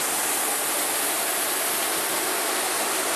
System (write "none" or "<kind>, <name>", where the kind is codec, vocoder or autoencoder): none